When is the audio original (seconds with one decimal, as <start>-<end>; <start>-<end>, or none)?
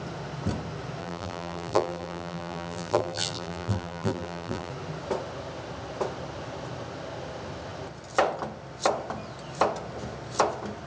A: 0.0-1.0; 4.7-10.9